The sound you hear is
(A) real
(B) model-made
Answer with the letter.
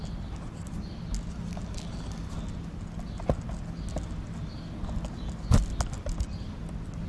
A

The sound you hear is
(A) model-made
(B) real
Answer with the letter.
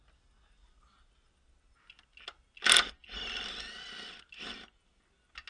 B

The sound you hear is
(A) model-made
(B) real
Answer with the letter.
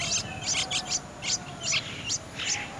B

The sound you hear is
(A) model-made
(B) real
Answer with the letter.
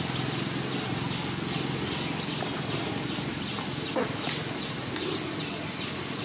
B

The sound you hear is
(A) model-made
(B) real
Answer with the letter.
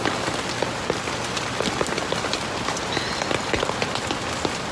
B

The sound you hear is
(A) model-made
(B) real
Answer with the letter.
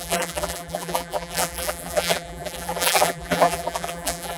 A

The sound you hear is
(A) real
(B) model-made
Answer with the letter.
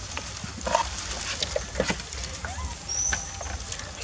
A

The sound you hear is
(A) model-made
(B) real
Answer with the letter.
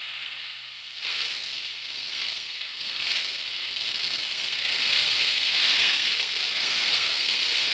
A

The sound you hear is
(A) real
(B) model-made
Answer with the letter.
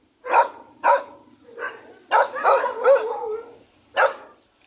A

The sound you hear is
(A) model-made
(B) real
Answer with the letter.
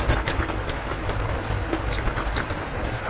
B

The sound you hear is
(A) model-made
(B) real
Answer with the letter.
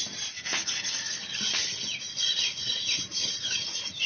B